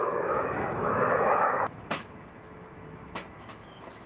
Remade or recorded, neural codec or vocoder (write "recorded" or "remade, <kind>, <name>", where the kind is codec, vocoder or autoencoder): remade, autoencoder, DAC-VAE